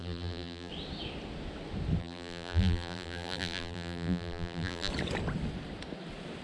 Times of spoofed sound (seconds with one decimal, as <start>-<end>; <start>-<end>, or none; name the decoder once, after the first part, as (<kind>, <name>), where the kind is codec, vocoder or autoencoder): 0.0-0.7 (vocoder, BigVGAN v2); 2.0-4.9